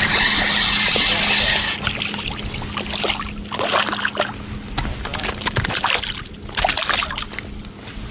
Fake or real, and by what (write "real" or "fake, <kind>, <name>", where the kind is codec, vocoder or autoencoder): real